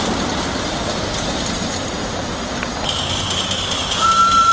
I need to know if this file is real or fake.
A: real